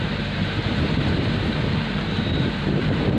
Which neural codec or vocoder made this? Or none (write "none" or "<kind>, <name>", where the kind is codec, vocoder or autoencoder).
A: vocoder, BigVGAN v2